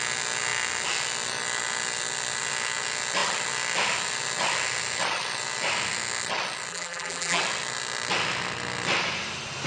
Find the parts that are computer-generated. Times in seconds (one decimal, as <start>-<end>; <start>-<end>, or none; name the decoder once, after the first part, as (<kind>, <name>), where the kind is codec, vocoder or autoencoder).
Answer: 6.7-7.4 (vocoder, BigVGAN v2)